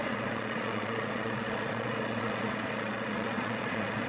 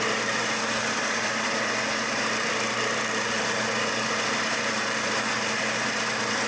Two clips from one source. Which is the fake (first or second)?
first